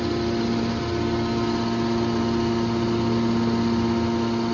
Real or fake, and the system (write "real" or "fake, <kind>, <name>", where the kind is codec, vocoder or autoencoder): real